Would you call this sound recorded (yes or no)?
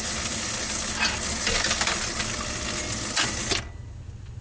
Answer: yes